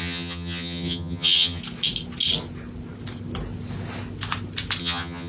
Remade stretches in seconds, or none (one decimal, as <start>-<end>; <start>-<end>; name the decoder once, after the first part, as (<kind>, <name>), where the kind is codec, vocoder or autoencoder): 0.0-1.6 (vocoder, HiFi-GAN); 4.8-5.3